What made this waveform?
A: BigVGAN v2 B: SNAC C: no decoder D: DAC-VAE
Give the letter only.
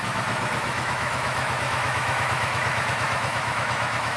D